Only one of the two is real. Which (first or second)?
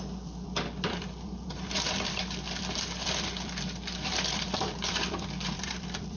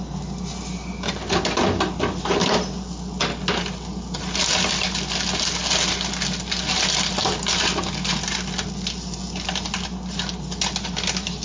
second